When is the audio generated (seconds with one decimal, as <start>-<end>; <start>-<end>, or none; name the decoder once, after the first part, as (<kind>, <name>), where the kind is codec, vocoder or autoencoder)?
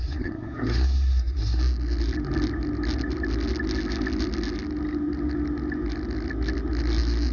0.0-1.6 (codec, SNAC)